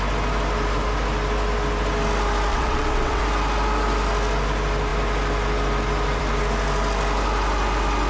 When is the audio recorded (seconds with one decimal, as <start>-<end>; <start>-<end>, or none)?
0.0-2.5; 3.2-8.1